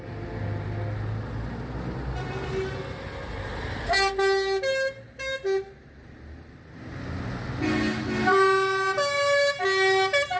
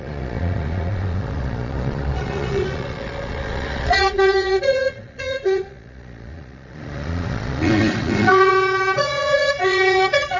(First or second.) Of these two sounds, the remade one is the second